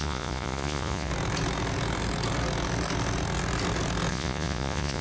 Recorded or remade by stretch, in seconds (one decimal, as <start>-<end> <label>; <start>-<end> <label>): 0.0-1.1 remade; 1.1-4.1 recorded; 4.1-5.0 remade